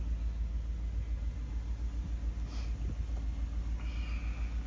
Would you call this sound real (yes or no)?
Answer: yes